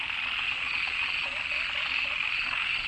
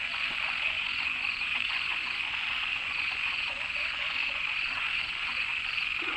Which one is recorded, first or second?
first